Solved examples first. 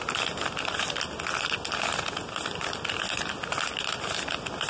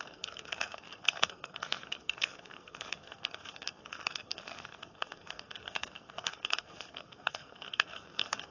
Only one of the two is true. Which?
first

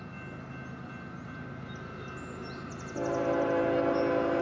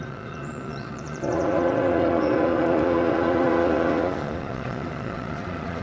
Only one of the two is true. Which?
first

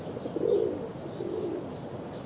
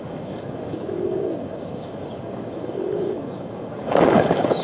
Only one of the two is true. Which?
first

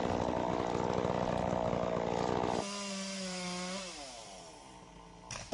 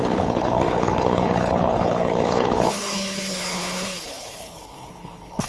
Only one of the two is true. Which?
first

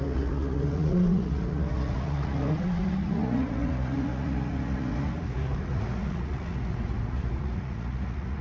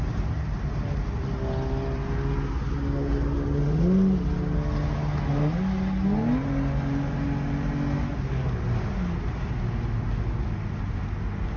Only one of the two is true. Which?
second